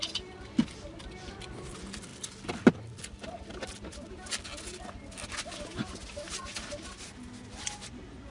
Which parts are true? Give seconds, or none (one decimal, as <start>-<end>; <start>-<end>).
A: 0.0-8.3